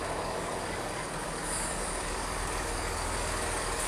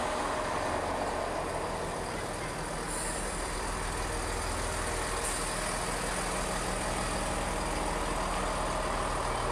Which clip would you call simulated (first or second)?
first